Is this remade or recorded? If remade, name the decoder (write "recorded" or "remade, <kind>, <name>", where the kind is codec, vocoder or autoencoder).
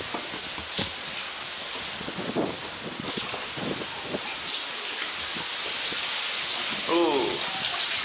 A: recorded